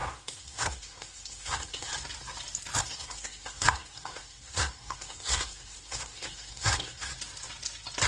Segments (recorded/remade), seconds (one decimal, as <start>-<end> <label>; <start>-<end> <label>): 0.0-1.9 remade; 1.9-2.8 recorded; 2.8-7.1 remade; 7.1-8.1 recorded